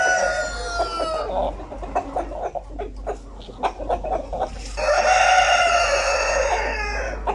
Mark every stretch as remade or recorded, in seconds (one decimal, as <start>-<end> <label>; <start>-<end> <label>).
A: 0.0-5.6 recorded; 5.6-6.5 remade; 6.5-7.3 recorded